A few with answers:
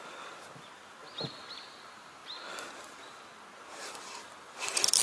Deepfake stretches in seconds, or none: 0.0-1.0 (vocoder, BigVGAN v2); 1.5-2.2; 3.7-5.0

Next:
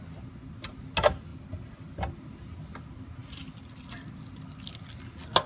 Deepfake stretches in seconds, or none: 1.3-2.1 (vocoder, BigVGAN v2)

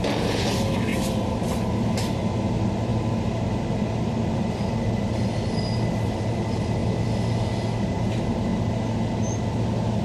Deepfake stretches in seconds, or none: none